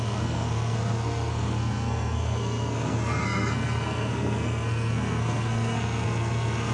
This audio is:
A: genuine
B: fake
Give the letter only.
B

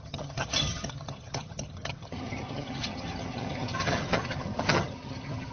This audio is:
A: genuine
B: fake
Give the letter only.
B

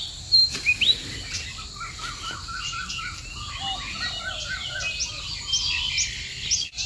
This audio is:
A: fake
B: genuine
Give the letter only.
B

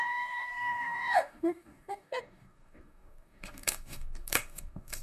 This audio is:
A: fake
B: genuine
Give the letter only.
A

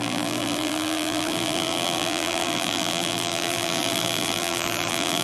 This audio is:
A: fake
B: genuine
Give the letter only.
A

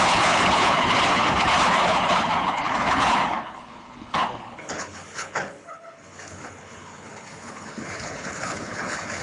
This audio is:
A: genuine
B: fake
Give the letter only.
B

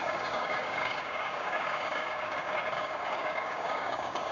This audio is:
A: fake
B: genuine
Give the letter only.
A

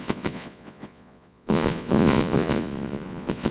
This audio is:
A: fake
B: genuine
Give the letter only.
A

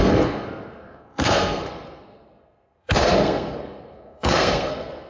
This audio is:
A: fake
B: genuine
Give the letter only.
A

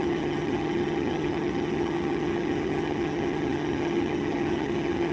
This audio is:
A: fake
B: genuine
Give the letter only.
A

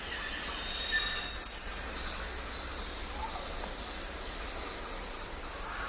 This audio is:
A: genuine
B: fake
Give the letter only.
A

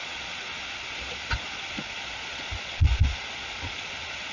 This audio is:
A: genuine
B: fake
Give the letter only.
B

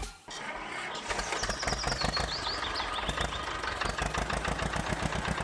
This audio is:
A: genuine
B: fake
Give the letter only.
A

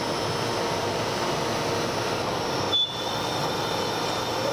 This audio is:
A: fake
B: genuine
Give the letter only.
B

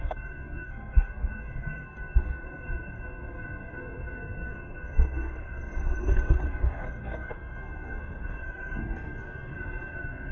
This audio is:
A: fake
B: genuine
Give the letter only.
A